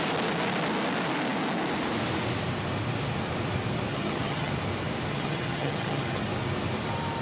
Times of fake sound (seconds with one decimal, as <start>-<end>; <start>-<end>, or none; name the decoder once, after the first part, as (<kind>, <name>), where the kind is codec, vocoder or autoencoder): 3.9-4.5 (vocoder, HiFi-GAN); 5.1-6.2